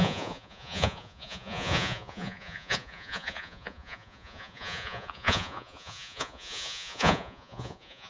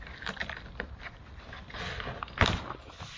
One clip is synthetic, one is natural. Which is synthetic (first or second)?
first